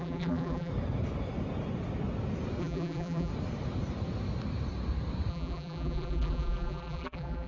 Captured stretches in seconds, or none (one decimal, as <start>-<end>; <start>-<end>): 0.7-2.6; 3.3-5.3